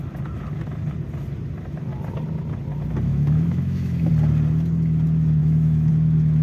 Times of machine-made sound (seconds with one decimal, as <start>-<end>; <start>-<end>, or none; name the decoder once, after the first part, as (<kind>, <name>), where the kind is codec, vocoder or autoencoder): 3.1-4.1 (autoencoder, DAC-VAE); 5.4-5.9